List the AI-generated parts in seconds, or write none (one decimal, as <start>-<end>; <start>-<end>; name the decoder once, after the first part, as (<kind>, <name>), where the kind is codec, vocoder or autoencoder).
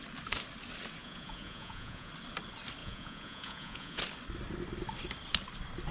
1.0-2.1 (vocoder, Vocos); 2.8-4.0